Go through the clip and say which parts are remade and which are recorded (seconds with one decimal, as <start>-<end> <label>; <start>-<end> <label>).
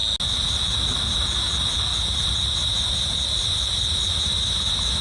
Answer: 0.0-1.9 recorded; 1.9-5.0 remade